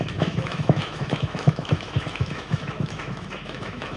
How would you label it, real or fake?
fake